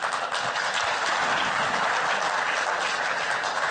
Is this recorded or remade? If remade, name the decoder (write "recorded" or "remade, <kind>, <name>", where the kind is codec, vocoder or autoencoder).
recorded